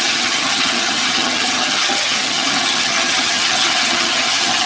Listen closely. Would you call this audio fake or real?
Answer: fake